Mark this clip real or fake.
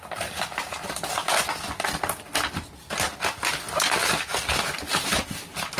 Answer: real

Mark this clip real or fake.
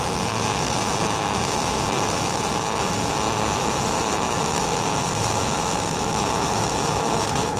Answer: fake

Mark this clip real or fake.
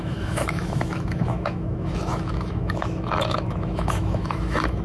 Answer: fake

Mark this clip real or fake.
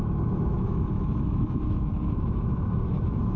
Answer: fake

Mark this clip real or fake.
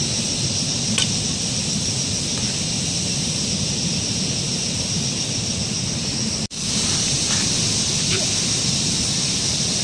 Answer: real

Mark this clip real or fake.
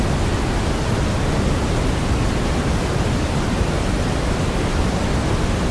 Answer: real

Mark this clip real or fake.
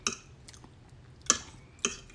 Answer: real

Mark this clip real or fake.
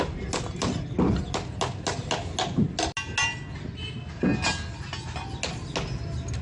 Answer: real